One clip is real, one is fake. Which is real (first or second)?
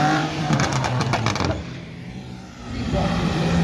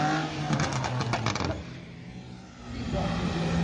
second